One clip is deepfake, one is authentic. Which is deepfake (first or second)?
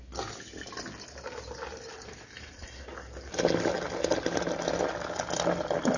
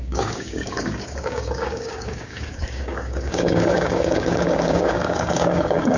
second